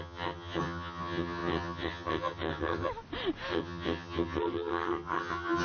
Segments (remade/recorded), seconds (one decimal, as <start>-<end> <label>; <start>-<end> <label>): 0.0-2.9 remade; 2.9-3.5 recorded; 3.5-5.6 remade